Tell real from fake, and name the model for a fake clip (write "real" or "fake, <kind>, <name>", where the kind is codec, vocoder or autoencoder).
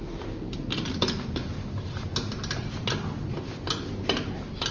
real